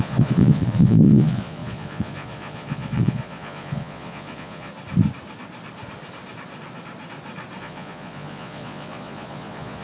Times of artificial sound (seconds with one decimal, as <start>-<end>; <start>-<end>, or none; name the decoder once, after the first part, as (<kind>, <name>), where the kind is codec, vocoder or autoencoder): 0.0-4.7 (vocoder, Vocos); 7.6-9.8